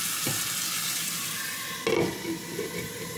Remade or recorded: recorded